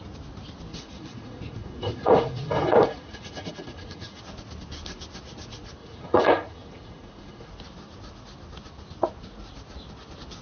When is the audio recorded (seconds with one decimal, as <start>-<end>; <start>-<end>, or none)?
0.0-0.7; 4.2-5.8; 7.5-10.4